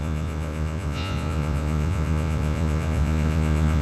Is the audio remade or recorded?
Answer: remade